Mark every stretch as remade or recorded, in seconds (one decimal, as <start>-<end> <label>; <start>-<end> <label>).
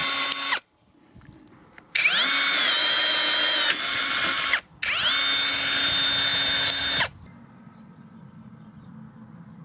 0.0-9.6 recorded